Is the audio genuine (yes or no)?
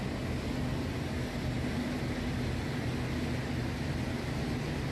yes